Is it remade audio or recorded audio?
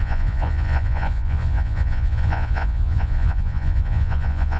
remade